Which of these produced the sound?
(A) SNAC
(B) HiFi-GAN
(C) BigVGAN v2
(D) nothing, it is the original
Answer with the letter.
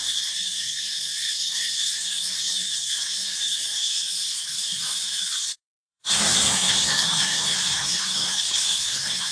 A